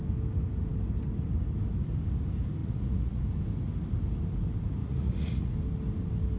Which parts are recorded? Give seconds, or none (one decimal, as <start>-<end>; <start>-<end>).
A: 0.0-2.6; 3.2-4.8; 5.5-6.4